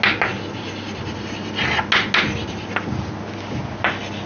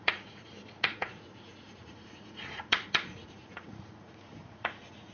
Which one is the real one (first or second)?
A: first